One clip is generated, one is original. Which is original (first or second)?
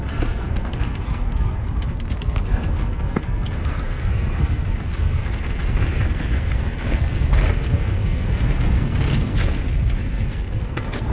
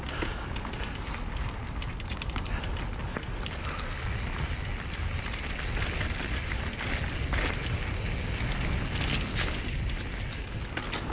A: second